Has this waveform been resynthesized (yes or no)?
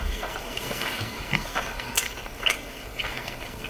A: yes